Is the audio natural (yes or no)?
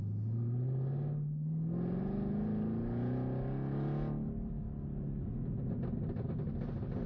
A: yes